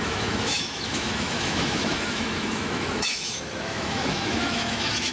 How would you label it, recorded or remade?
remade